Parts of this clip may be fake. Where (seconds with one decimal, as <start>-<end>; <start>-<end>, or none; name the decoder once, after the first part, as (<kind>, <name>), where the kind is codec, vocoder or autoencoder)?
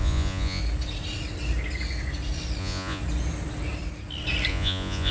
0.0-0.6 (vocoder, Vocos); 2.6-3.0; 4.5-5.1